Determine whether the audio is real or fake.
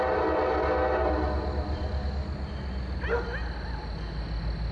real